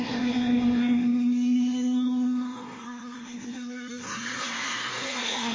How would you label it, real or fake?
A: fake